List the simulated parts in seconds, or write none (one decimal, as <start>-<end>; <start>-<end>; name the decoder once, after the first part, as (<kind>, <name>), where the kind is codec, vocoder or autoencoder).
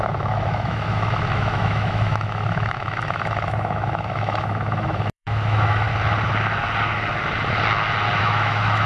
0.0-5.9 (autoencoder, DAC-VAE); 8.2-8.9